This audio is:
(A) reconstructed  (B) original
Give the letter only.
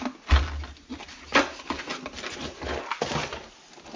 B